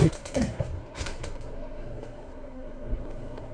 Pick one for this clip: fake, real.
fake